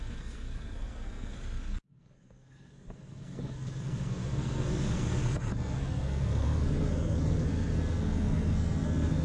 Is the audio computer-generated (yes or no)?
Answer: yes